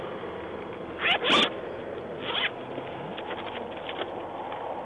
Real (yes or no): yes